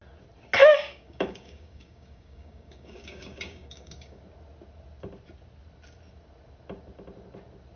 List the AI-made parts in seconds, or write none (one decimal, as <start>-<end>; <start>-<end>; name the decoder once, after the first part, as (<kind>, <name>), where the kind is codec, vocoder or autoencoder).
0.6-4.2 (codec, DAC)